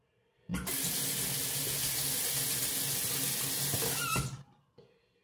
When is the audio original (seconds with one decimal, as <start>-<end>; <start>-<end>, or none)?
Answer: 0.0-5.2